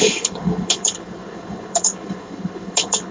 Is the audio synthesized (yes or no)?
yes